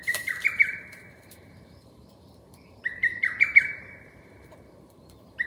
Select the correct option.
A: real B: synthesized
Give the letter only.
B